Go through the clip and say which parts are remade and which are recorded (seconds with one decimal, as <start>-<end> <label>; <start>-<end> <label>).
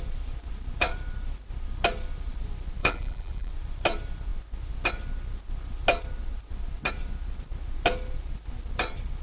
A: 0.0-2.8 recorded; 2.8-3.5 remade; 3.5-9.2 recorded